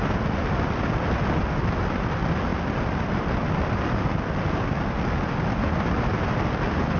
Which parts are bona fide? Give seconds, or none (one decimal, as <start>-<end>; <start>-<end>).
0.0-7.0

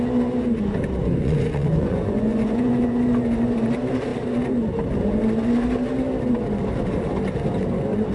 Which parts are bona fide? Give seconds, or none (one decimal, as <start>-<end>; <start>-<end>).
0.0-1.0; 3.0-8.1

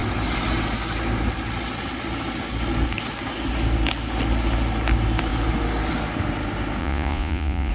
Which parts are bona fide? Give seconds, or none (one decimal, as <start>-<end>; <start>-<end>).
0.0-6.8

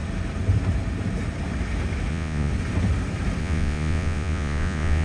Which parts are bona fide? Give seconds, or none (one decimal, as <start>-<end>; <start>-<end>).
0.0-2.1; 2.5-3.4